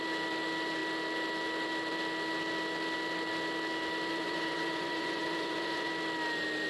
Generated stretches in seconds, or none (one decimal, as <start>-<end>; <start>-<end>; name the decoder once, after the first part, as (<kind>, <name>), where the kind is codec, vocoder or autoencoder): 4.1-5.9 (vocoder, Vocos)